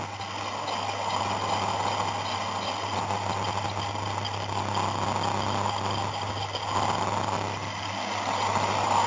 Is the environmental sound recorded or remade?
recorded